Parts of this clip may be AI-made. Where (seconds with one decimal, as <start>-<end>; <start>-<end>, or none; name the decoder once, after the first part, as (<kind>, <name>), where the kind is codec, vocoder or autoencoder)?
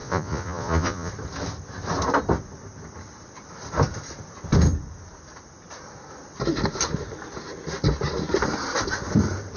0.0-1.1 (vocoder, Vocos)